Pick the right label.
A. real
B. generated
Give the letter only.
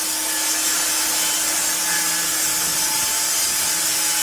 A